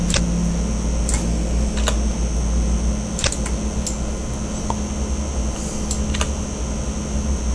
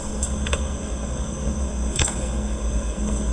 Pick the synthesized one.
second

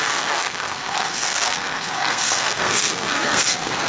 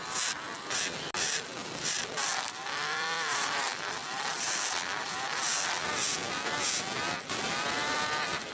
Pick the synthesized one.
first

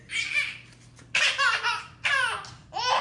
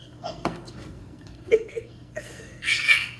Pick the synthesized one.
second